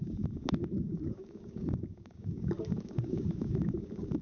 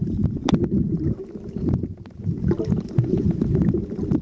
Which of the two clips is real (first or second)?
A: second